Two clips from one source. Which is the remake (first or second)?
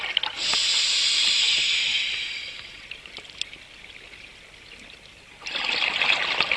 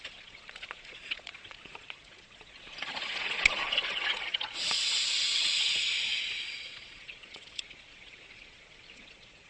second